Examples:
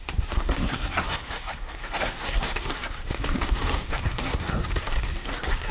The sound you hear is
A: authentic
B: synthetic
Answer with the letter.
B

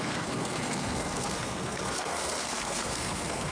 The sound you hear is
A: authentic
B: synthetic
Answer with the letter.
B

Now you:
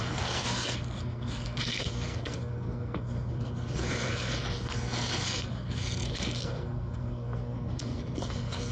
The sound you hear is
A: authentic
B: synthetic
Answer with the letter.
B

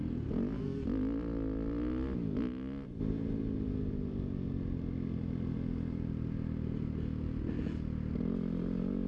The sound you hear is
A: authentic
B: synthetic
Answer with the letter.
A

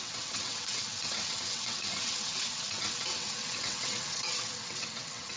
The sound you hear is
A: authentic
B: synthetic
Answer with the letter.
B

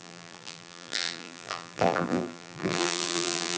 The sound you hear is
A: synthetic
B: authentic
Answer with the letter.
A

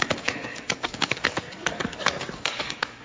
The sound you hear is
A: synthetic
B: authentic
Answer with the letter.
A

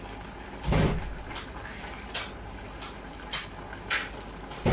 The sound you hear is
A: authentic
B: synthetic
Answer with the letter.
A